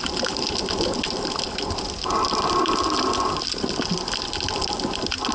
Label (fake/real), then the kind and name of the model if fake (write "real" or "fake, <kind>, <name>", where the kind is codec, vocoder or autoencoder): real